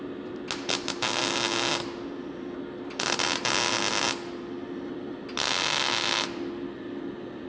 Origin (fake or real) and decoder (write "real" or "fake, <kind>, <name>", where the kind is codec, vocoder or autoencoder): real